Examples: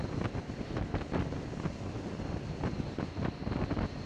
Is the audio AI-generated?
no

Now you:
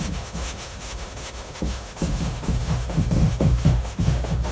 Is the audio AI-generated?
yes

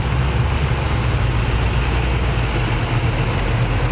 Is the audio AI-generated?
no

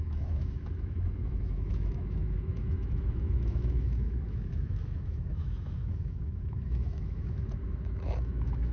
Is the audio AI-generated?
yes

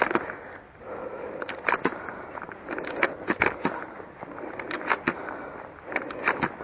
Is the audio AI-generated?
no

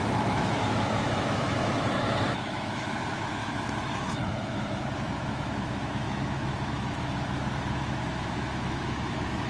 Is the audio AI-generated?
yes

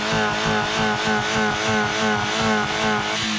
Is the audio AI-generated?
no